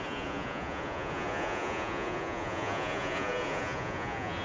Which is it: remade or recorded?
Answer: remade